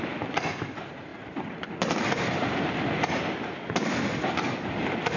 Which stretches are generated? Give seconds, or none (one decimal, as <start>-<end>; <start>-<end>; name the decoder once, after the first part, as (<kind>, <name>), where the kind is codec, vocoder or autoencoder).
1.1-1.7 (vocoder, BigVGAN v2)